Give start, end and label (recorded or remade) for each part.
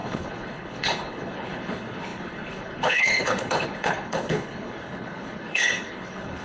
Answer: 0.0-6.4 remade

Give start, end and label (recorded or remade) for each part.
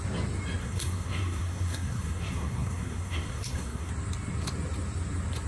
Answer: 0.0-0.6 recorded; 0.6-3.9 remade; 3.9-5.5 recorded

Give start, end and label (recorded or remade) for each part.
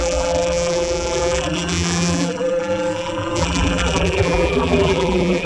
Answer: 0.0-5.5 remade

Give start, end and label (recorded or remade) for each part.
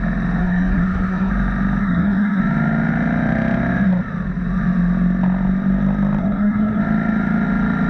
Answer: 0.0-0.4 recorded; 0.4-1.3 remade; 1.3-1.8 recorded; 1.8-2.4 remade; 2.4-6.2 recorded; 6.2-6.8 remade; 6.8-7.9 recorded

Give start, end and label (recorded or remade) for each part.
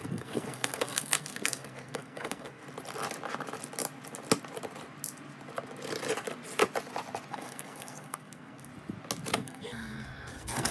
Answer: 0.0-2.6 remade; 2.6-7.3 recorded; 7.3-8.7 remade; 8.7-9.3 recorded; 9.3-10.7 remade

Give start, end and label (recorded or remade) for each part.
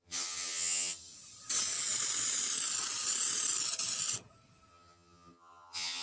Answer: 0.0-1.1 remade; 1.1-4.7 recorded; 4.7-6.0 remade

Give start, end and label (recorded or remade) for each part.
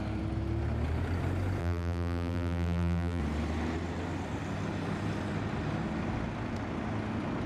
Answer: 0.0-1.6 recorded; 1.6-3.2 remade; 3.2-7.5 recorded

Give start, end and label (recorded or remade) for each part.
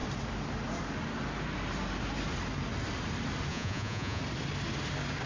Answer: 0.0-3.5 recorded; 3.5-4.2 remade; 4.2-5.3 recorded